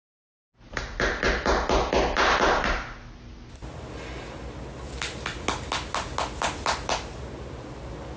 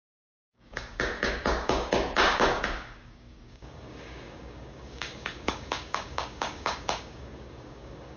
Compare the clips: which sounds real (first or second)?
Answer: first